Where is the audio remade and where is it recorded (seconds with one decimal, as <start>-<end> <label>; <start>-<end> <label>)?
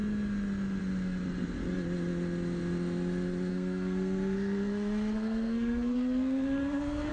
0.0-3.5 recorded; 3.5-7.1 remade